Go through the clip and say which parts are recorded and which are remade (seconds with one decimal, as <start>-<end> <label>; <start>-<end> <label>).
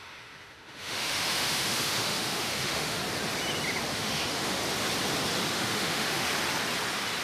0.0-3.0 remade; 3.0-3.9 recorded; 3.9-4.6 remade; 4.6-5.5 recorded; 5.5-6.3 remade; 6.3-7.2 recorded